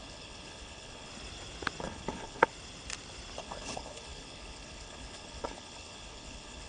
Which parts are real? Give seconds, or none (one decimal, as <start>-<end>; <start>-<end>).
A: 1.1-1.8; 2.5-3.4